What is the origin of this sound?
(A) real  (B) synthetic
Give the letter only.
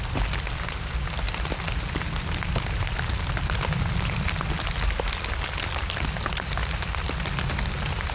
A